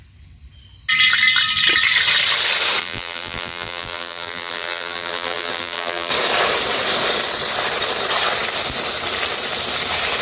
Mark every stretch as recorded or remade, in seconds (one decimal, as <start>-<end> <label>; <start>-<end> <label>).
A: 0.0-2.8 recorded; 2.8-6.1 remade; 6.1-10.2 recorded